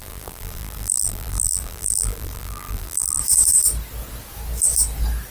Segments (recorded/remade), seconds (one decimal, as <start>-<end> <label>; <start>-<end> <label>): 0.0-3.2 remade; 3.2-5.3 recorded

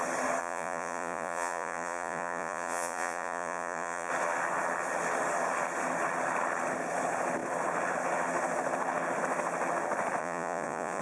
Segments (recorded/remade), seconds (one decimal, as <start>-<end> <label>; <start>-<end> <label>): 0.0-0.4 recorded; 0.4-4.1 remade; 4.1-10.2 recorded; 10.2-11.0 remade

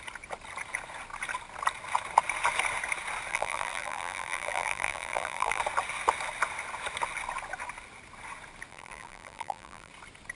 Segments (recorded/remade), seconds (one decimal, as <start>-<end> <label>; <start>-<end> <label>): 0.0-3.3 recorded; 3.3-5.6 remade; 5.6-8.7 recorded; 8.7-9.9 remade; 9.9-10.3 recorded

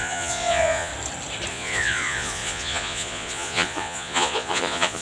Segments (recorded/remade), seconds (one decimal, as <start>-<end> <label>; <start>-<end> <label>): 0.0-0.9 remade; 0.9-1.5 recorded; 1.5-5.0 remade